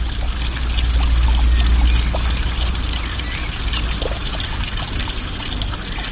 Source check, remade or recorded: recorded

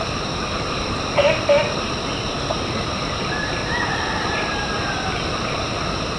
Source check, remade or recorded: remade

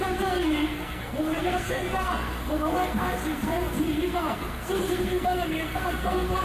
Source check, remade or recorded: remade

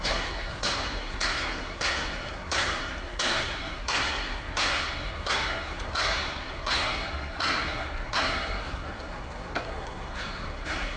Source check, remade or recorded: remade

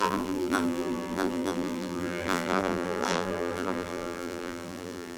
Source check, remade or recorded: remade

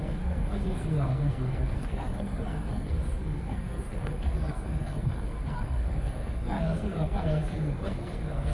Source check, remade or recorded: remade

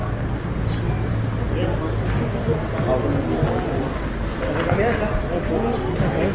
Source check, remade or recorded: recorded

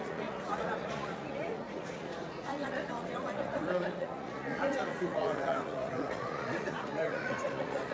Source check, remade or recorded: remade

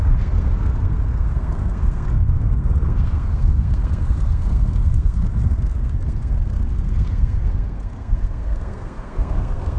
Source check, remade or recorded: remade